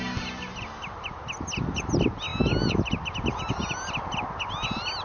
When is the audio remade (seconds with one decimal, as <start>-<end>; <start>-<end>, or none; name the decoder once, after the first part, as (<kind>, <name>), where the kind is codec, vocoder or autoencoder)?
none